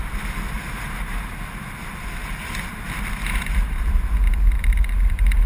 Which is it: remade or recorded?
recorded